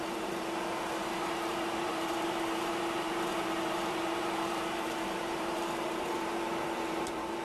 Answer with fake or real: fake